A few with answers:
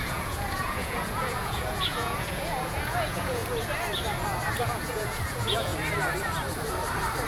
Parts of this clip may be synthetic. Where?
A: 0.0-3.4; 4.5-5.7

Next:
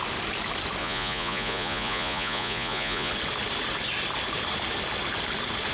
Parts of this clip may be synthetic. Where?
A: 0.8-3.1

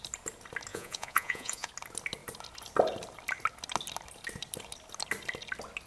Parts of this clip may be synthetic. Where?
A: 0.7-1.7

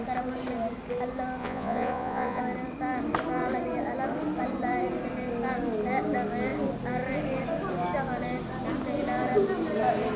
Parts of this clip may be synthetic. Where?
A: 1.4-2.4

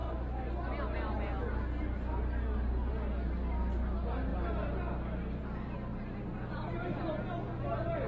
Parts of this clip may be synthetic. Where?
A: none

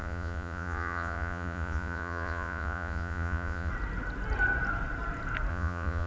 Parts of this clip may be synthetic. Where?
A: 0.0-3.7; 5.5-6.1

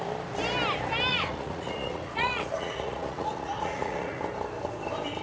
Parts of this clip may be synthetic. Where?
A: 1.1-4.2